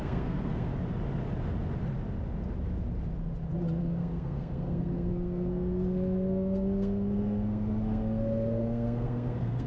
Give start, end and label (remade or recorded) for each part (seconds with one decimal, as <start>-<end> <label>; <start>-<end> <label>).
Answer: 0.0-0.7 remade; 0.7-3.8 recorded; 3.8-9.7 remade